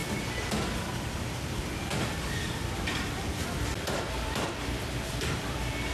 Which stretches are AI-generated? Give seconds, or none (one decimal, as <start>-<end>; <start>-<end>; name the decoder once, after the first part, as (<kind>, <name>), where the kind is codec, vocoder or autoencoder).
1.3-5.9 (vocoder, BigVGAN v2)